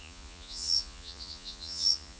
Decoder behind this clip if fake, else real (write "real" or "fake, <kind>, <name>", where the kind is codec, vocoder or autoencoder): fake, vocoder, Vocos